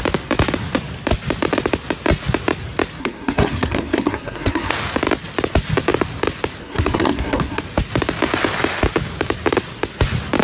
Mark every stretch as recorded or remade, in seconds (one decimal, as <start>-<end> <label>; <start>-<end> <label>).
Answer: 0.0-3.0 recorded; 3.0-4.7 remade; 4.7-6.6 recorded; 6.6-7.6 remade; 7.6-10.4 recorded